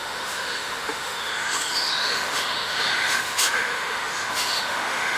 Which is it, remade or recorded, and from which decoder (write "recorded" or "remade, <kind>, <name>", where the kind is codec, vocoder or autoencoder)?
remade, autoencoder, DAC-VAE